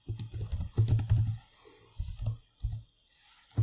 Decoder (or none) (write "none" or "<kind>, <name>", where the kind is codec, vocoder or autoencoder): none